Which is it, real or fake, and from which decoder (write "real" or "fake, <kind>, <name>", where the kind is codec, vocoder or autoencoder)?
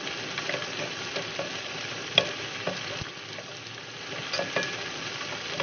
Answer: real